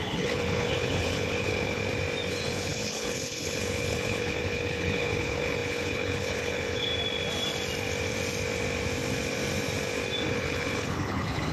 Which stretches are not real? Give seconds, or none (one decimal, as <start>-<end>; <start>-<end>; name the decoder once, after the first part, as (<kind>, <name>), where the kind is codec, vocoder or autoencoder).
0.0-1.8 (codec, HILCodec); 2.3-6.9; 10.3-11.5